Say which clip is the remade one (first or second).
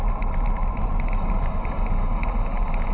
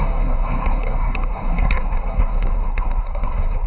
second